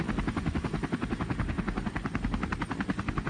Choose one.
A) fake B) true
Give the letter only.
B